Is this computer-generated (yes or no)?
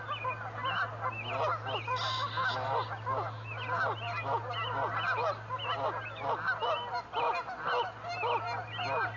no